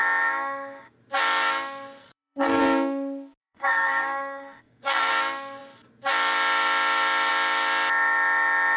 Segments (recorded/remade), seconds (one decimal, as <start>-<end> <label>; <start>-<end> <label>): 0.0-2.0 recorded; 2.0-2.6 remade; 2.6-3.4 recorded; 3.4-5.1 remade; 5.1-8.8 recorded